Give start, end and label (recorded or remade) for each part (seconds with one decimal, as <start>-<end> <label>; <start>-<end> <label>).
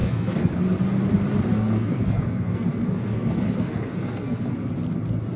0.0-0.6 remade; 0.6-1.5 recorded; 1.5-4.7 remade; 4.7-5.4 recorded